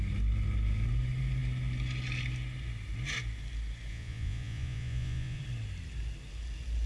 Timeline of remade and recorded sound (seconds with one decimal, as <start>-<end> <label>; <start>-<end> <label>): 0.0-3.9 recorded; 3.9-5.4 remade; 5.4-6.9 recorded